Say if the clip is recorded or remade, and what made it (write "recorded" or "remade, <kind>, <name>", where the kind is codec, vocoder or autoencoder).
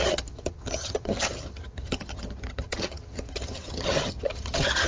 remade, vocoder, HiFi-GAN